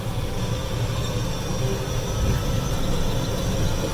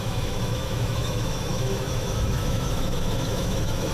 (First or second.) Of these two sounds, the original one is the first